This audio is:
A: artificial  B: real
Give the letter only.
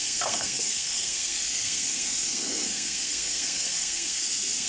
A